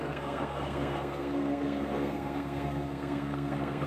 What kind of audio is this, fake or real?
fake